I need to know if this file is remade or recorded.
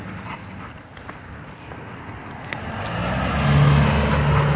recorded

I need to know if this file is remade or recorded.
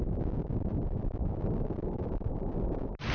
recorded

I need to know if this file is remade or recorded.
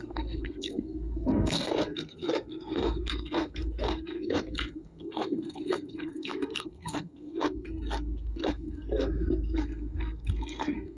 remade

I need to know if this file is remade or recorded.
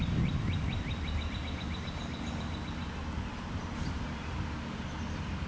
recorded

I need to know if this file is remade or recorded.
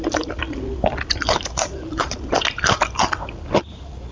recorded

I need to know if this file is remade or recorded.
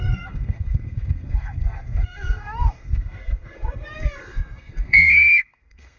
remade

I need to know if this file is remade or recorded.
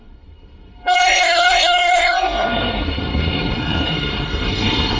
remade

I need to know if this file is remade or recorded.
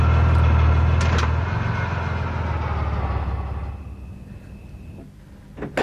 recorded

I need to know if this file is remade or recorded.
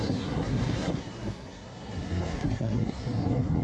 remade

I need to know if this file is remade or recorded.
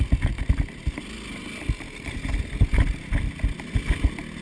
recorded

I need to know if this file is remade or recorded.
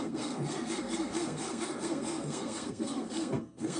remade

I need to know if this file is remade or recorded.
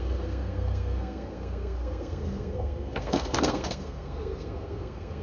remade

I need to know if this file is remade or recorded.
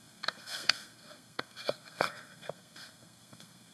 remade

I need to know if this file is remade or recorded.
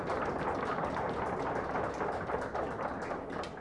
recorded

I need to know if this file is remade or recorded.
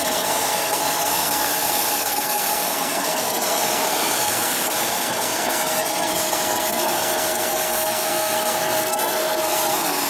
remade